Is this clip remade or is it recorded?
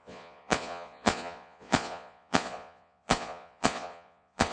remade